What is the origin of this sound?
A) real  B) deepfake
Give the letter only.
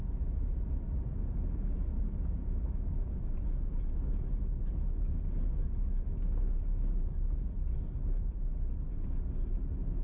A